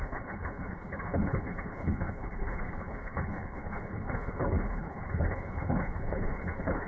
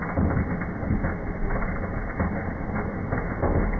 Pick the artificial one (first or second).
first